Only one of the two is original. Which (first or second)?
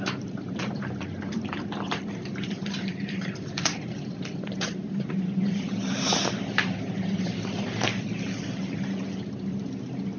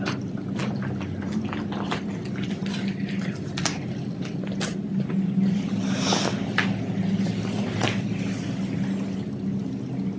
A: second